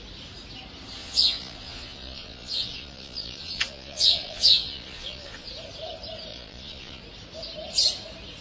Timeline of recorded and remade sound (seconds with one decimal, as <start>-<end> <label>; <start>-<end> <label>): 0.0-1.0 recorded; 1.0-5.5 remade; 5.5-6.3 recorded; 6.3-7.0 remade; 7.0-8.4 recorded